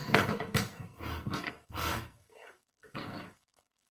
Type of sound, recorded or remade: remade